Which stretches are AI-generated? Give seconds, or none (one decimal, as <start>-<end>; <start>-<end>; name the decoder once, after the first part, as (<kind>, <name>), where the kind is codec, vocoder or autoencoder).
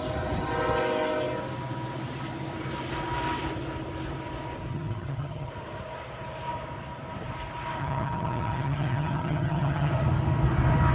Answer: 4.7-5.5 (vocoder, HiFi-GAN); 7.8-9.9